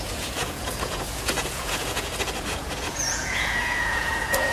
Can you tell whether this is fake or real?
fake